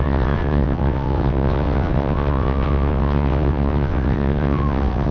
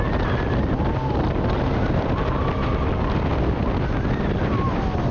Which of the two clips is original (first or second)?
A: second